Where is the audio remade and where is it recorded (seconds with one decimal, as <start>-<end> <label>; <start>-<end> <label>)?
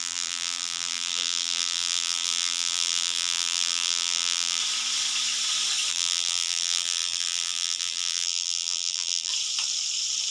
0.0-4.6 remade; 4.6-5.9 recorded; 5.9-9.3 remade; 9.3-10.3 recorded